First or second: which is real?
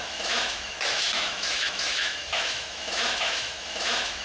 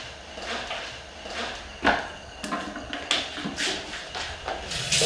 second